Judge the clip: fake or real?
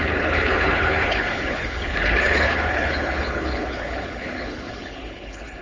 fake